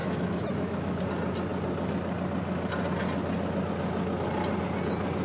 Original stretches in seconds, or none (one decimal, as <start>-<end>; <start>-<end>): 1.0-5.2